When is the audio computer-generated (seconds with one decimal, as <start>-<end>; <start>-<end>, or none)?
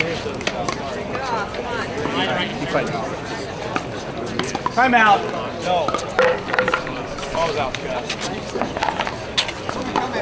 none